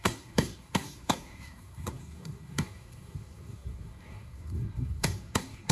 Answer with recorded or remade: remade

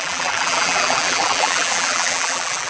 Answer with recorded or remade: remade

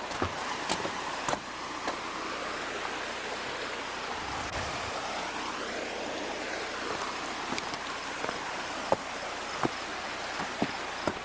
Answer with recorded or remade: recorded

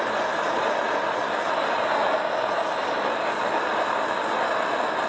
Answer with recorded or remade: recorded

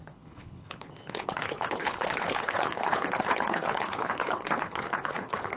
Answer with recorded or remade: remade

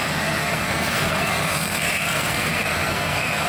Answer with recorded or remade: remade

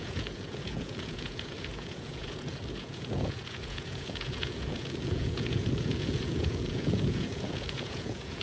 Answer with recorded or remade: remade